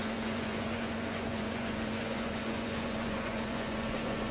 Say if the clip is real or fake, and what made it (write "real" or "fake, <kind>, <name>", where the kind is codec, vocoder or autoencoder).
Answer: fake, vocoder, Vocos